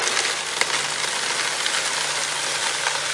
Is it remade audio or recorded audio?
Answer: recorded